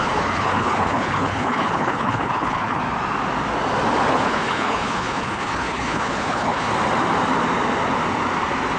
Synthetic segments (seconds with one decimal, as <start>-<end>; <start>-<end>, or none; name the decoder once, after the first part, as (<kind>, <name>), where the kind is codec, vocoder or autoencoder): 0.0-2.8 (codec, HILCodec); 4.1-6.7